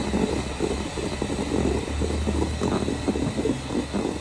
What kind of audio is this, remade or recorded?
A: recorded